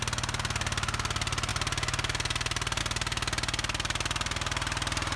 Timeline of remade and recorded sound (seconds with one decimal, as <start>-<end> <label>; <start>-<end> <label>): 0.0-5.2 recorded